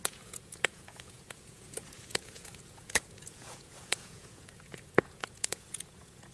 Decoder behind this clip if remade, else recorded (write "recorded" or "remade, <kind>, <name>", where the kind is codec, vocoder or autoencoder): remade, vocoder, Vocos